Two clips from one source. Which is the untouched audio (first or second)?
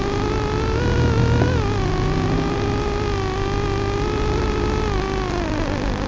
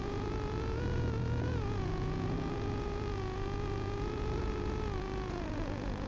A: first